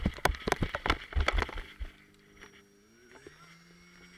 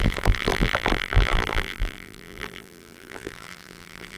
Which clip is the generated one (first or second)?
second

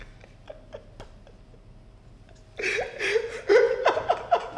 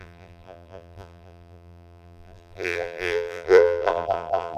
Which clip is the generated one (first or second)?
second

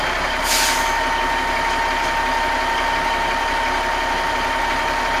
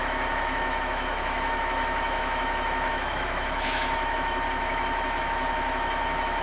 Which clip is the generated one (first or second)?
second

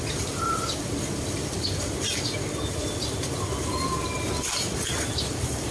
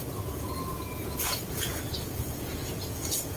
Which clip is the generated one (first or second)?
second